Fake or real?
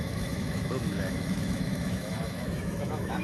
fake